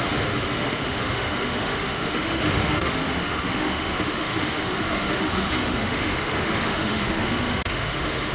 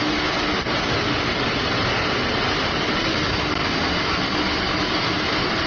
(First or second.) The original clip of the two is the second